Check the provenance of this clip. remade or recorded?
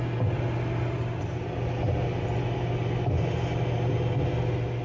recorded